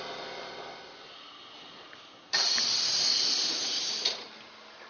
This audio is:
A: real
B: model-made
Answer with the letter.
A